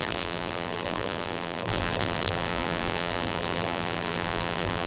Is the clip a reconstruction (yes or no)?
yes